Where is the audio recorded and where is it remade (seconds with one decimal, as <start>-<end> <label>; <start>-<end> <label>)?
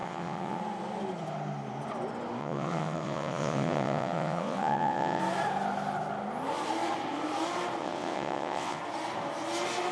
0.0-0.6 remade; 0.6-2.4 recorded; 2.4-5.2 remade; 5.2-7.8 recorded; 7.8-8.8 remade; 8.8-9.9 recorded